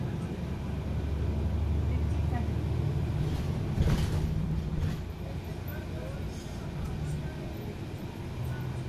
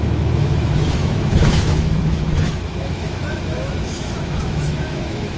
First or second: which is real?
first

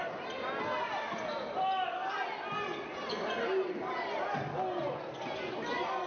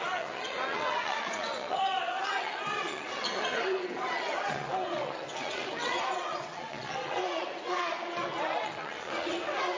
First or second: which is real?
first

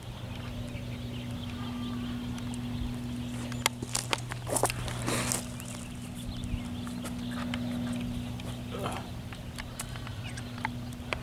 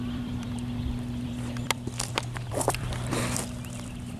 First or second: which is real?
first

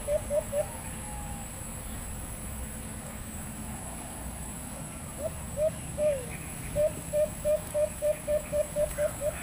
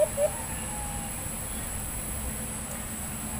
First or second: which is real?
second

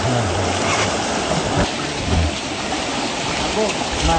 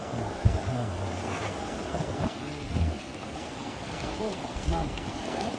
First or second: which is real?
first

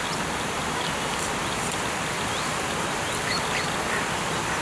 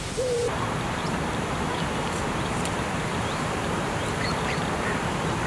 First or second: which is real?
first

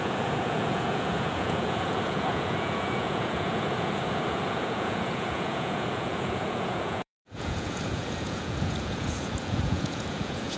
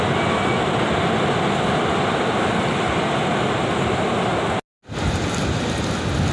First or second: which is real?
second